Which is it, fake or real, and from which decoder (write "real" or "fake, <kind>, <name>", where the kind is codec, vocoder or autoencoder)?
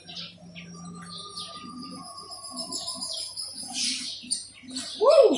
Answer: fake, vocoder, BigVGAN v2